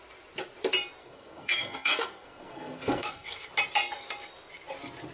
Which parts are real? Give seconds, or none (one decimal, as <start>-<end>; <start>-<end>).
0.0-1.0; 3.5-5.1